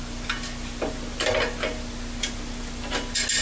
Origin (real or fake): real